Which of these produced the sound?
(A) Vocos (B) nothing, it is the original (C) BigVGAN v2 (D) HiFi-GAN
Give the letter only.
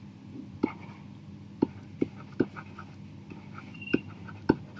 B